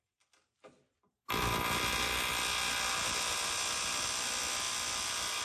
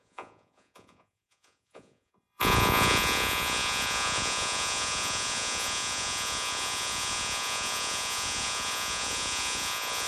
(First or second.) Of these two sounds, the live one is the first